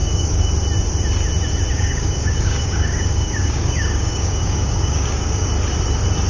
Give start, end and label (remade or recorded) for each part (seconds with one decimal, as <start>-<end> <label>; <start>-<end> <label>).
0.0-0.5 remade; 0.5-1.7 recorded; 1.7-5.5 remade; 5.5-6.3 recorded